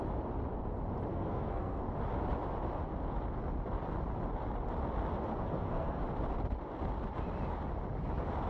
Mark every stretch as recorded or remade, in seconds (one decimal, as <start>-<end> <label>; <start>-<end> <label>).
0.0-1.1 recorded; 1.1-1.8 remade; 1.8-5.3 recorded; 5.3-6.0 remade; 6.0-8.5 recorded